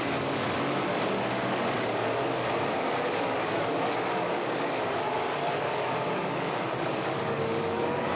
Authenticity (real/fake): fake